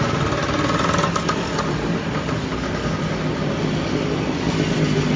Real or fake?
real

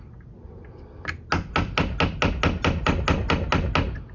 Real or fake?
real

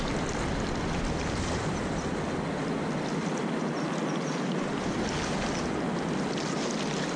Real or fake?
real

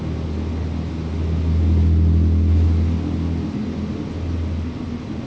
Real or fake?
real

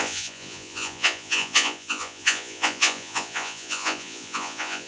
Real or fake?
fake